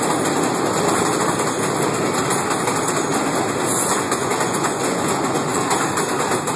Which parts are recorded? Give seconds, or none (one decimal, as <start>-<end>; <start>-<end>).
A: 0.0-3.7; 5.7-6.6